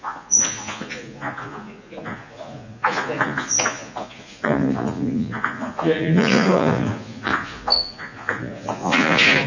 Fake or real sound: fake